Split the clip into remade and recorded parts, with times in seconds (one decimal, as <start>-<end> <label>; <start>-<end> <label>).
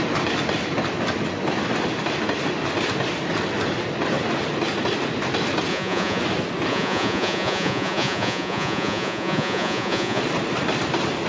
0.0-5.7 recorded; 5.7-6.2 remade; 6.2-6.7 recorded; 6.7-10.2 remade; 10.2-11.3 recorded